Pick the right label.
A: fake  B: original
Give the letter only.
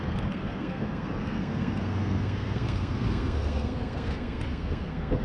A